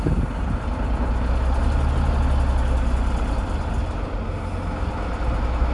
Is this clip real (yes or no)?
yes